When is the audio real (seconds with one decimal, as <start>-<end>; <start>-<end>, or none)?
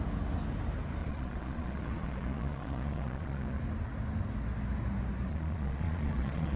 0.0-1.0; 3.6-5.3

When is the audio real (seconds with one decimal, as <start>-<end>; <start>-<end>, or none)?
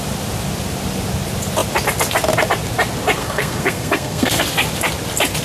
0.0-3.2; 4.4-5.4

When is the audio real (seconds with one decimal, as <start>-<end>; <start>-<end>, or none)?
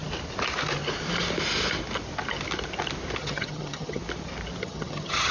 0.0-3.2; 4.0-4.6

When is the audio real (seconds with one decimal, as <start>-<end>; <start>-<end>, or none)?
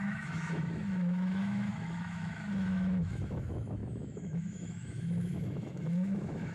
none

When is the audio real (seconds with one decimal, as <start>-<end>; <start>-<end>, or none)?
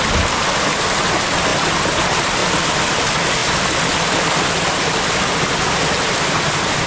0.0-1.5; 2.0-2.4; 3.0-6.9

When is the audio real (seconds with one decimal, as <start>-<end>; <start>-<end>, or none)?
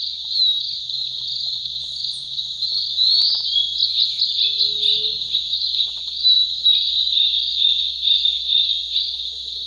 0.0-9.7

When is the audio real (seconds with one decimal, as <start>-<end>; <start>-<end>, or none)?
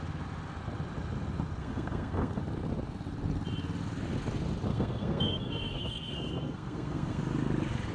0.0-1.6; 2.4-4.7; 7.2-7.9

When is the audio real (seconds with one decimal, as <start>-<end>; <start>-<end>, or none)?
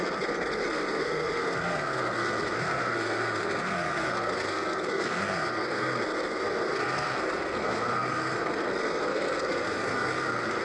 none